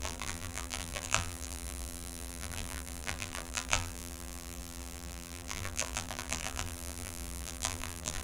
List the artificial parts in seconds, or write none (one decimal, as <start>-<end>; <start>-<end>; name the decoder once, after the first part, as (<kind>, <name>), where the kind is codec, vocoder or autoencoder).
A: 0.0-8.2 (vocoder, BigVGAN v2)